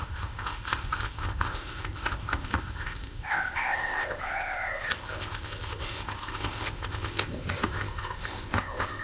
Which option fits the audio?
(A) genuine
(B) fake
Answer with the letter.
B